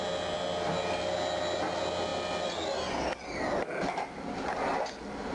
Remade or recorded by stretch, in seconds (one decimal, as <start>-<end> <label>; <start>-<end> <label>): 0.0-5.3 recorded